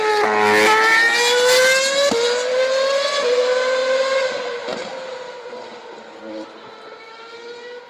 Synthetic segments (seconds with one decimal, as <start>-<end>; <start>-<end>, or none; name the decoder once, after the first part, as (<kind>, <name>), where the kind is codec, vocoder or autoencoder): none